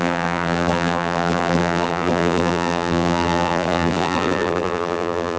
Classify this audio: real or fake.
fake